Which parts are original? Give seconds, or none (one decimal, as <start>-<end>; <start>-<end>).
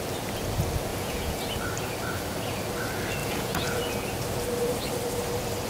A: 0.0-0.9; 1.4-3.2; 3.8-5.7